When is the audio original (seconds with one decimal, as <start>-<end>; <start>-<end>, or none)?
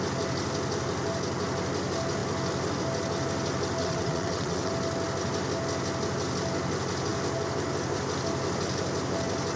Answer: 0.0-3.8; 4.7-9.6